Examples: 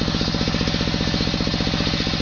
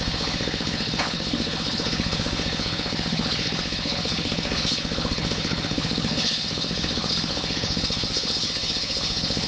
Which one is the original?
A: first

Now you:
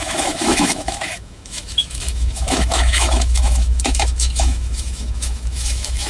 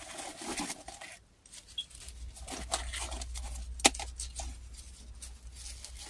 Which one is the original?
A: second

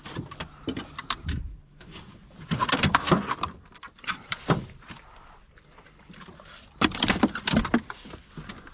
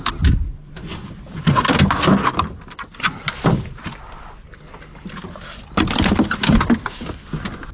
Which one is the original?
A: second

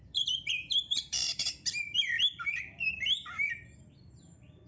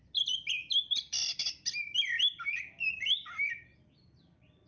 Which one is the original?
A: second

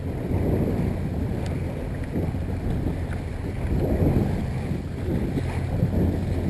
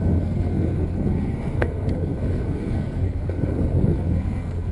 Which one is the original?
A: first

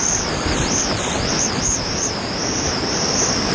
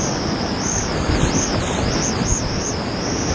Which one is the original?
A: second